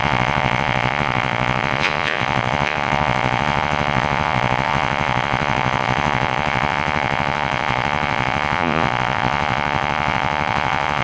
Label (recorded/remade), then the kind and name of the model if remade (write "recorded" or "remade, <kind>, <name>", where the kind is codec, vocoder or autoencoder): remade, vocoder, Vocos